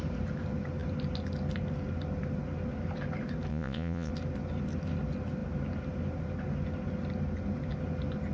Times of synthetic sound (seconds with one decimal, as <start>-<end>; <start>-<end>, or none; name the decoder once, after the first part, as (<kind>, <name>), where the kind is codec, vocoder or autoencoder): 3.5-4.1 (vocoder, Vocos)